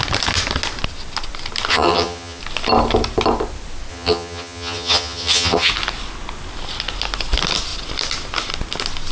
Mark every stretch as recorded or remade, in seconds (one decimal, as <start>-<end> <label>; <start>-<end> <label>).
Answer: 0.0-1.7 recorded; 1.7-2.4 remade; 2.4-3.9 recorded; 3.9-5.7 remade; 5.7-9.1 recorded